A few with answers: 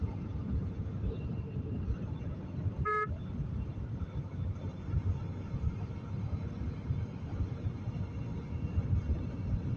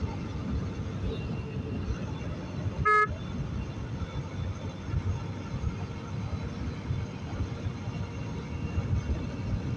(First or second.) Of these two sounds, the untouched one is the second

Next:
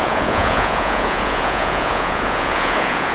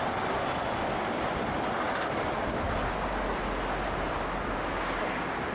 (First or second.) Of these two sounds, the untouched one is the second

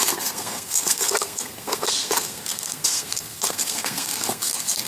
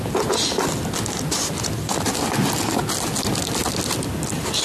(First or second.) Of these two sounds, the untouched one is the second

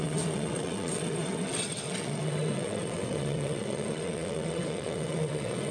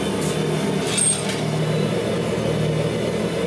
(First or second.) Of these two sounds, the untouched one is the second